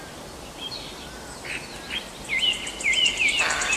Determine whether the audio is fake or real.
real